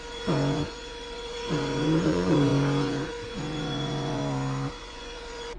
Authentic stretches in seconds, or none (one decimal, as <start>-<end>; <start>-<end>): 4.2-4.8